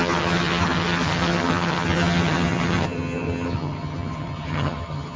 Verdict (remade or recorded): remade